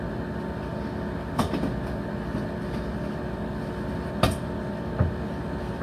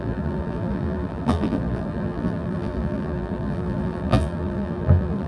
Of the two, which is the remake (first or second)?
second